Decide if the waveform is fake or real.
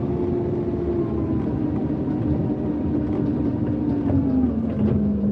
real